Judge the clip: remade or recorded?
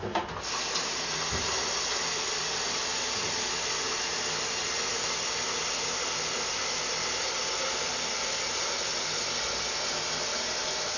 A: recorded